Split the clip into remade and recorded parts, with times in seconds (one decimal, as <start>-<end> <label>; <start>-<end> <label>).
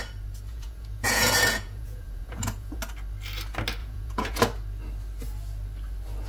0.0-0.5 recorded; 0.5-2.8 remade; 2.8-3.8 recorded; 3.8-4.4 remade; 4.4-6.3 recorded